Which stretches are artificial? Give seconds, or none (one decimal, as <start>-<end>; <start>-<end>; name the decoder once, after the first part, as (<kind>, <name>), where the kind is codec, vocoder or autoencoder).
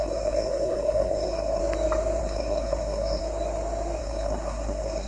0.0-1.6 (codec, SNAC); 2.2-3.2; 4.0-5.1